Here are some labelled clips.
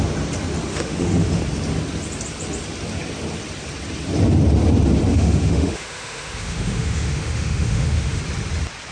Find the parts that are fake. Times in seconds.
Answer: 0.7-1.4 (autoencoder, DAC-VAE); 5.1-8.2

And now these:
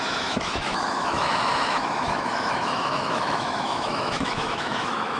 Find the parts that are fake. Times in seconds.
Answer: 0.0-5.2 (autoencoder, DAC-VAE)

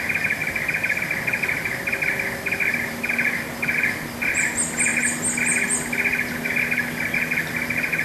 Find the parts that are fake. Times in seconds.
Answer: none